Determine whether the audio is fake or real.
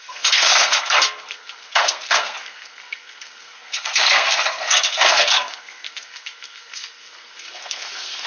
fake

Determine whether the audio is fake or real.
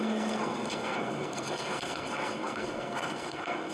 fake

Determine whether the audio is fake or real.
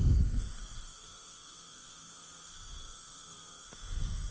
fake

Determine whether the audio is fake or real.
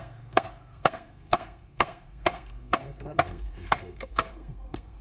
fake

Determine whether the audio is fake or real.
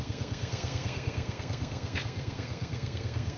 fake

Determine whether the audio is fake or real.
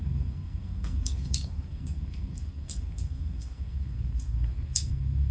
fake